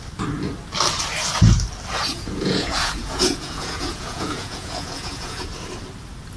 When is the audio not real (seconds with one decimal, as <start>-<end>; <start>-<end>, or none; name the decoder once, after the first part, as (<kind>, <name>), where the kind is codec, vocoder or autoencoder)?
2.1-5.5 (vocoder, Vocos)